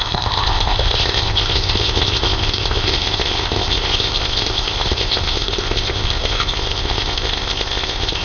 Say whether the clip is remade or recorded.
remade